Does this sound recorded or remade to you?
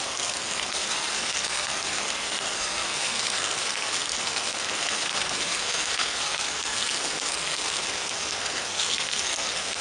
remade